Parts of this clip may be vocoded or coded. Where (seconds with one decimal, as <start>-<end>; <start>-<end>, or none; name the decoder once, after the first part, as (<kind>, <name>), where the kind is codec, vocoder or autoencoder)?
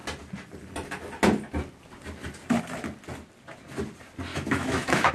4.3-5.1 (autoencoder, DAC-VAE)